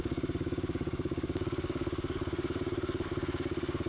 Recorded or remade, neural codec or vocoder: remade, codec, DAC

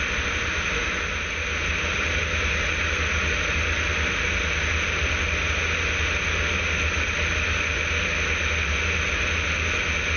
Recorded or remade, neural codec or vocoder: recorded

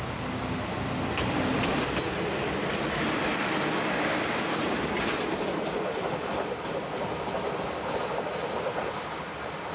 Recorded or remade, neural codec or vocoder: recorded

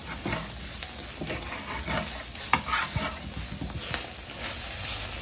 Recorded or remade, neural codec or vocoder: recorded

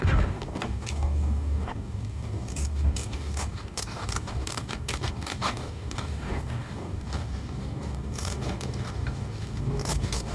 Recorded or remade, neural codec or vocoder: remade, codec, DAC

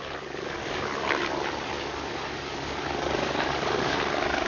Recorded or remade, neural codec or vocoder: remade, codec, DAC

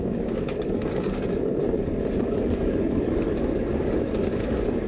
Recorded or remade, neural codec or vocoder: remade, codec, DAC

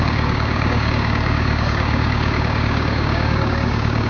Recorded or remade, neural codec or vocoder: remade, codec, DAC